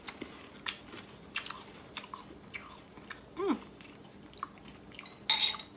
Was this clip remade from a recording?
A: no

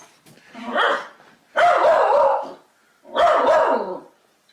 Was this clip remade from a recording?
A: no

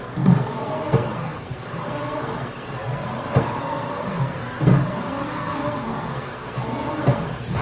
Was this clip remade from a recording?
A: yes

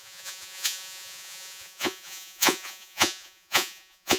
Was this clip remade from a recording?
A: yes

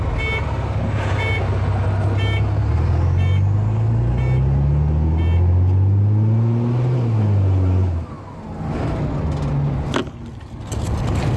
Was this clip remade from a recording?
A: no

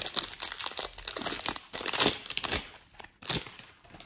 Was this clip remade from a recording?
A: no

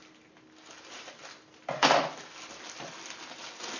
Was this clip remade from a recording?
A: no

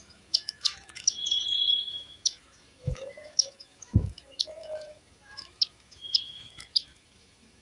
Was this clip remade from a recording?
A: yes